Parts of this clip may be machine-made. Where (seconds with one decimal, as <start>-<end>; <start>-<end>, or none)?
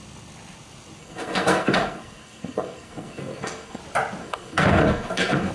1.0-3.8; 4.2-5.5